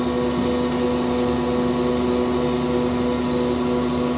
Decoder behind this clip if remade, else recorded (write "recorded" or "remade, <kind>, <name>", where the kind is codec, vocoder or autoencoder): recorded